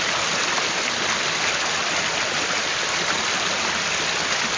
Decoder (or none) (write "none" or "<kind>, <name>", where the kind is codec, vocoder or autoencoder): none